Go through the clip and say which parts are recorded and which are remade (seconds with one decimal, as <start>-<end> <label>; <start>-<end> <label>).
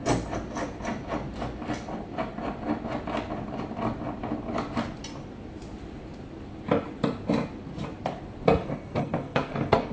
0.0-8.6 recorded; 8.6-9.9 remade